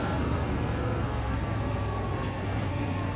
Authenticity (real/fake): fake